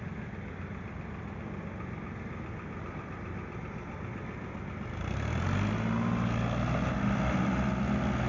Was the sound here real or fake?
real